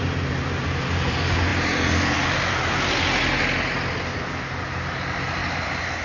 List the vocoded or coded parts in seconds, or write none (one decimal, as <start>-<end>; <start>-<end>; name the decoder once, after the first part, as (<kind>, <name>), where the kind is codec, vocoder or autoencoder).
none